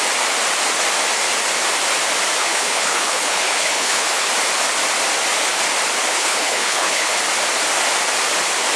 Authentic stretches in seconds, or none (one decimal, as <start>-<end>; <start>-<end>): 0.0-2.4; 4.3-6.1; 7.2-8.8